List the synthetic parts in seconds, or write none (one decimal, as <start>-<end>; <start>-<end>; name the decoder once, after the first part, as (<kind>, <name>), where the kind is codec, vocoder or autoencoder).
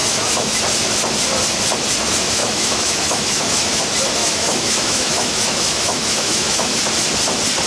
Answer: 0.0-0.6 (autoencoder, DAC-VAE); 2.4-3.8; 4.2-6.8